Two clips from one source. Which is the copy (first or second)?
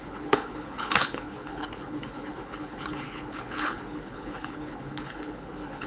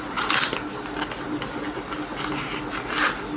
first